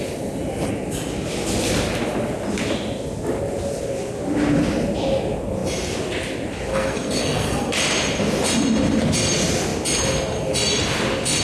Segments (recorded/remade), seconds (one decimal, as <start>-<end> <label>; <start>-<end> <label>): 0.0-6.7 recorded; 6.7-7.7 remade; 7.7-11.4 recorded